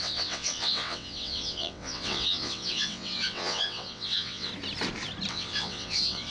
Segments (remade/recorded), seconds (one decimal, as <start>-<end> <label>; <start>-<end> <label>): 0.0-4.5 remade; 4.5-5.3 recorded; 5.3-6.3 remade